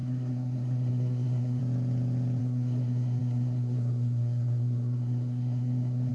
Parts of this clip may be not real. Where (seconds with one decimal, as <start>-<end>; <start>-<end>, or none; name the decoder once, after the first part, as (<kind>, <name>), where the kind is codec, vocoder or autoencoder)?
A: 0.0-1.6 (codec, SNAC); 2.4-6.1

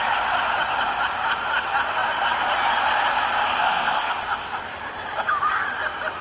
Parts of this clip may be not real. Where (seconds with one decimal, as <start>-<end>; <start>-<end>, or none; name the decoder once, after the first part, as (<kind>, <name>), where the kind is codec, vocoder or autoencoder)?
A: 3.6-4.1 (codec, SNAC)

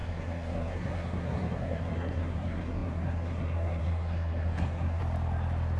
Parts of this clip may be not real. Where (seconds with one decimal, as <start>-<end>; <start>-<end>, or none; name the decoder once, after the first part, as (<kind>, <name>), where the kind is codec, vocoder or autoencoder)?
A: 0.0-5.0 (codec, SNAC)